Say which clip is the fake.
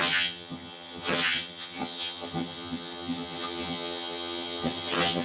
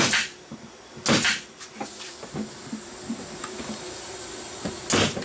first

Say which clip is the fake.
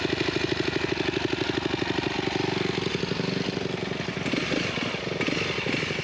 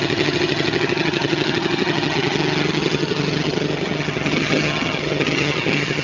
second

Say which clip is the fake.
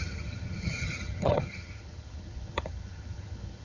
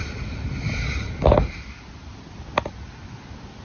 first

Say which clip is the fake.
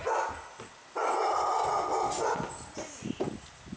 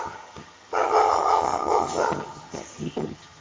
second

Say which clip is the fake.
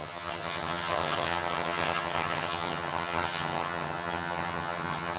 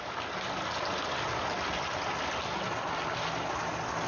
first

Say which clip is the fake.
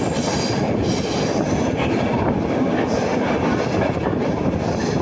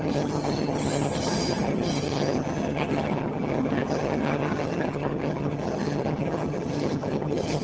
second